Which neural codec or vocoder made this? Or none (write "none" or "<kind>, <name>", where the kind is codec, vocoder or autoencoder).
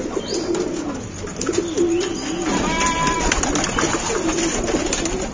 none